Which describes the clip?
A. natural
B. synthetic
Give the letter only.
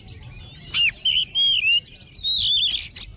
A